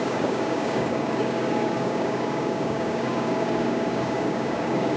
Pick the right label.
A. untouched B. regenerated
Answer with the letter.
B